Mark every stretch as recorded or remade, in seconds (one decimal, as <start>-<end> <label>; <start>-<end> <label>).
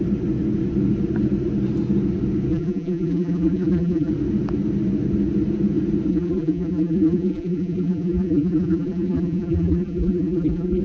0.0-2.5 recorded; 2.5-4.1 remade; 4.1-6.1 recorded; 6.1-10.8 remade